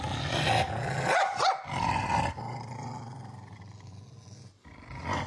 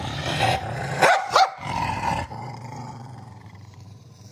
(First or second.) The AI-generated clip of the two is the second